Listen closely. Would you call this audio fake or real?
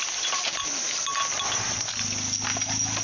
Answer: real